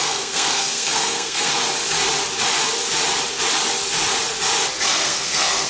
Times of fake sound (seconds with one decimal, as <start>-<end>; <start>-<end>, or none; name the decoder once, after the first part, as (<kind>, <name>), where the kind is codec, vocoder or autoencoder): 0.0-1.5 (codec, SNAC); 4.9-5.7